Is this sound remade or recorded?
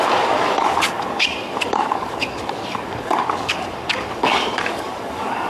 remade